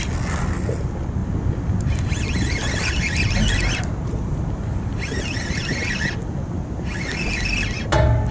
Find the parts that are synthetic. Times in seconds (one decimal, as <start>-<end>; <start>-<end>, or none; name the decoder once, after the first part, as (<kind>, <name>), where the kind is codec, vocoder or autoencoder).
none